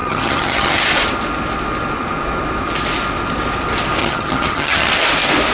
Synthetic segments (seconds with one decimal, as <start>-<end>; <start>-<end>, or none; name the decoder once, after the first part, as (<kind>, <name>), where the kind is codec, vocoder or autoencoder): 0.0-0.8 (vocoder, HiFi-GAN); 4.0-4.9